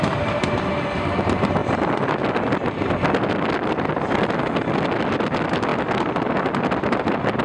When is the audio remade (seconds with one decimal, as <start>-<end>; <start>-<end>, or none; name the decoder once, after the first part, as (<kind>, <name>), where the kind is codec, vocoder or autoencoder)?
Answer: none